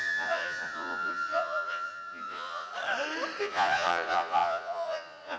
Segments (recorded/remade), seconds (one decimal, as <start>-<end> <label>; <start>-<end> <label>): 0.0-2.7 remade; 2.7-3.4 recorded; 3.4-5.4 remade